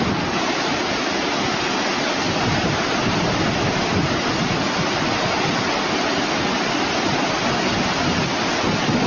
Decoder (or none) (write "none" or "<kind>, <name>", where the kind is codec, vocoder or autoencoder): vocoder, BigVGAN v2